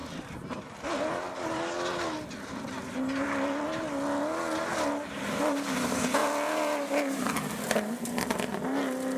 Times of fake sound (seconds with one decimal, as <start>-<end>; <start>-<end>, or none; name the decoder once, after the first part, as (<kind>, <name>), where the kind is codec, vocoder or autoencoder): none